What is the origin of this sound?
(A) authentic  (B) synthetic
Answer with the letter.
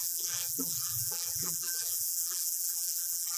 B